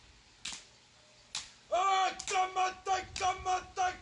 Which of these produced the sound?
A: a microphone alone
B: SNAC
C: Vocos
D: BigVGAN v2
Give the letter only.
A